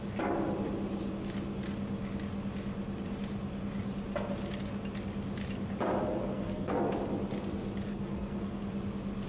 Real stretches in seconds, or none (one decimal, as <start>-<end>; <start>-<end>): 0.0-6.1; 6.8-7.9; 8.6-9.3